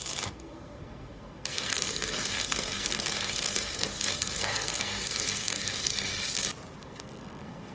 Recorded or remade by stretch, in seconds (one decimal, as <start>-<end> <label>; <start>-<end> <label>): 0.0-6.1 remade; 6.1-6.8 recorded; 6.8-7.7 remade